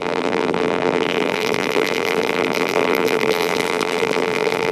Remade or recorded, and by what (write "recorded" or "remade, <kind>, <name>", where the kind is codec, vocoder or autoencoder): remade, vocoder, BigVGAN v2